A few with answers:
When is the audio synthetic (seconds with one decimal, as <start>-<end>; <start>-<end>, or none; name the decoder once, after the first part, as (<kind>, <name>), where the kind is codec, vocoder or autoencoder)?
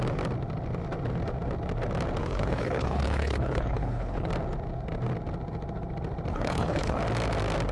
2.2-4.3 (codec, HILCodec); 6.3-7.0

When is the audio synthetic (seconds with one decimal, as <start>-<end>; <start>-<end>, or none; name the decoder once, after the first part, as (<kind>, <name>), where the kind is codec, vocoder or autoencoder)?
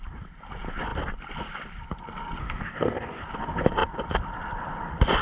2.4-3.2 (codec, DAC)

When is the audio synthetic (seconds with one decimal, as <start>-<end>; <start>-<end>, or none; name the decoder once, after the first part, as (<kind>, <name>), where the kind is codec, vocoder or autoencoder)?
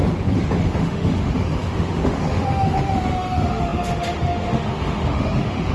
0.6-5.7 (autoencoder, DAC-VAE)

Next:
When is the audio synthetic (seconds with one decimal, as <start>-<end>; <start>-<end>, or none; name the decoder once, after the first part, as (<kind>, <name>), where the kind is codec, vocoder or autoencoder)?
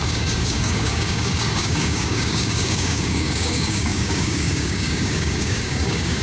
0.0-6.2 (codec, DAC)